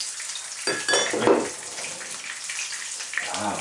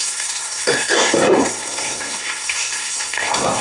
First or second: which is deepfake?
second